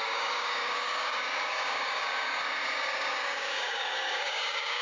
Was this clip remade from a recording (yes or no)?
yes